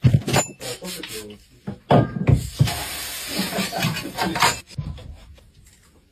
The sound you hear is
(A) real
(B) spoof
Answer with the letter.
A